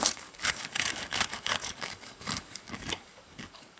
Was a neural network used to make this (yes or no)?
yes